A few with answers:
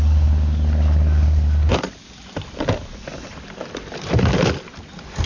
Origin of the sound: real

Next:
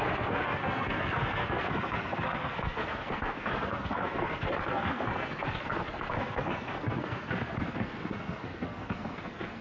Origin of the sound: fake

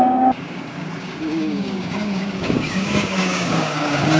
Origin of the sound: fake